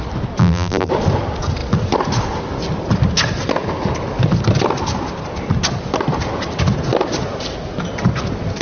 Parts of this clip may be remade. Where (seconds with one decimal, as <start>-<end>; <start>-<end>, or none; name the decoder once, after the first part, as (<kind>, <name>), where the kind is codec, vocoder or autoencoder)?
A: 0.4-0.9 (vocoder, BigVGAN v2)

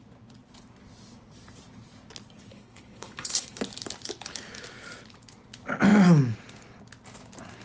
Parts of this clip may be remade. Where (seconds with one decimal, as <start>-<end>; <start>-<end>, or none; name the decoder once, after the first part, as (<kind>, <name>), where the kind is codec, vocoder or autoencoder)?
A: 2.5-3.6 (codec, HILCodec)

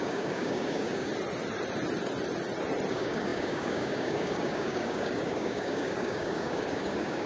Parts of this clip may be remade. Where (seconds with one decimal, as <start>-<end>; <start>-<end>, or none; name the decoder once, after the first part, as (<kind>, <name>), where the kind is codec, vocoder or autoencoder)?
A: 0.0-1.1 (codec, DAC); 2.9-7.3

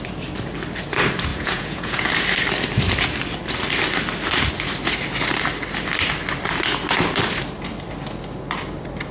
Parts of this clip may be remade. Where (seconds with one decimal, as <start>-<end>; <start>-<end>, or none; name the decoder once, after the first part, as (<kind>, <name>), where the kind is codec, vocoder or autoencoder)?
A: 1.3-2.0 (vocoder, Vocos)

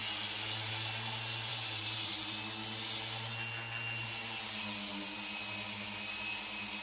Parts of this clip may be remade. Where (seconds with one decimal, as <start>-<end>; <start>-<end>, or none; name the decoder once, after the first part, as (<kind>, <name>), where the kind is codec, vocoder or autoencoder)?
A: 1.5-2.1 (vocoder, BigVGAN v2)

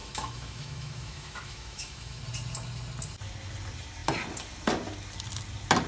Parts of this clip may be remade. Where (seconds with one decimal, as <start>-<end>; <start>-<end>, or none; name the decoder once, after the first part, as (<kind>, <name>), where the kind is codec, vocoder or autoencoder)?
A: 0.0-2.2 (autoencoder, DAC-VAE)

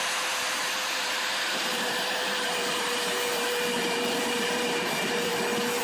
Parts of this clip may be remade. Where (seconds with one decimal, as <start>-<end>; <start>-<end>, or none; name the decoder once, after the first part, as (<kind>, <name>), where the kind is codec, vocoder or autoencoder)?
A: 0.0-5.3 (vocoder, BigVGAN v2)